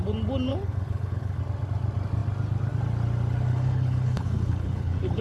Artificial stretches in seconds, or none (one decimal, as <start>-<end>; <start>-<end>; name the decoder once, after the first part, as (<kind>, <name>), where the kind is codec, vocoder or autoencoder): 0.5-1.4 (codec, HILCodec); 3.5-5.2